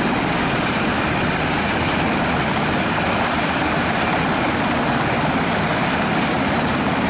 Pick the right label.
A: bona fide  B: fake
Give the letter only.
A